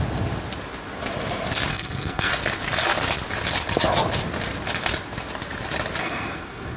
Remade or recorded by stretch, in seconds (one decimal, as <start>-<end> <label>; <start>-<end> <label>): 0.0-1.7 recorded; 1.7-2.3 remade; 2.3-6.0 recorded; 6.0-6.8 remade